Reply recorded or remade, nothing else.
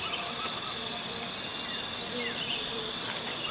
recorded